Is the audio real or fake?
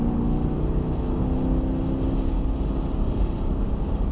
real